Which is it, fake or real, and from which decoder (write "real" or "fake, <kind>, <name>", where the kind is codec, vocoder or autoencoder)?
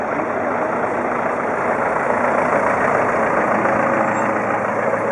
real